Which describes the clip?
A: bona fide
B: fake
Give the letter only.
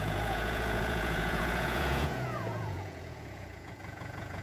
B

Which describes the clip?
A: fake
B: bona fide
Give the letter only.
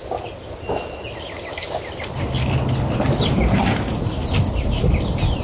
B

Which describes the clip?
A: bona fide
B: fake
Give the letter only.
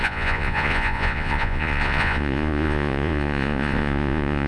B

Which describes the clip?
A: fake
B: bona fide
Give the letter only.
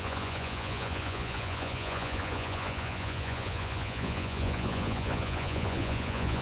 A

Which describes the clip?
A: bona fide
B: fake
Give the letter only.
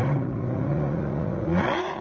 B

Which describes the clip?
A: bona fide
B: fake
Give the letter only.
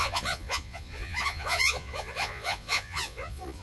B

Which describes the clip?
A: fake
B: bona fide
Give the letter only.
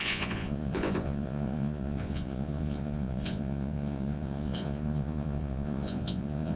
A